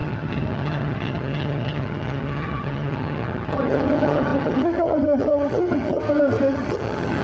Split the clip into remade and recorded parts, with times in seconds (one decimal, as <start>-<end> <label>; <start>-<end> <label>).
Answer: 0.0-6.0 remade; 6.0-6.5 recorded; 6.5-7.2 remade